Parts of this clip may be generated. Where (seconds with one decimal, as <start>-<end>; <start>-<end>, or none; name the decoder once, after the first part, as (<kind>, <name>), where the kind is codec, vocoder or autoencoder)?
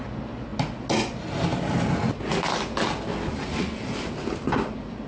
none